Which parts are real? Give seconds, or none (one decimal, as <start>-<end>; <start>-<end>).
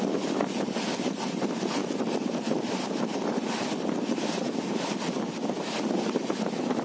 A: 0.0-6.8